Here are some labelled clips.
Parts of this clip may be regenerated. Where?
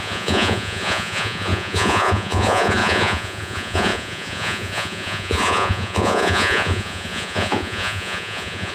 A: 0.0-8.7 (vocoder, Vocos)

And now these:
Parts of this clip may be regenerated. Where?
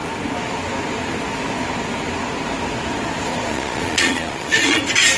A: 3.5-4.8 (vocoder, Vocos)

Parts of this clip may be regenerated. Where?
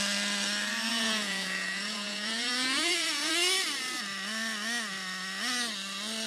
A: 0.9-3.3 (vocoder, Vocos)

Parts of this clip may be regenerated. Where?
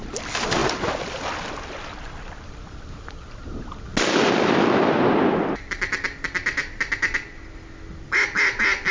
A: none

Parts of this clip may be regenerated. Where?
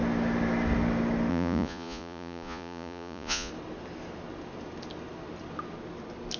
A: 1.3-3.5 (vocoder, Vocos)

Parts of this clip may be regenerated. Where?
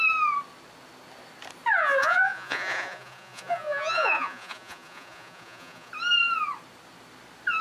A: 1.8-5.9 (vocoder, Vocos)